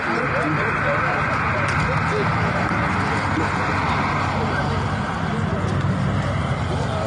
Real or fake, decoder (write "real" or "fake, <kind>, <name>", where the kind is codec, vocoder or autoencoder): real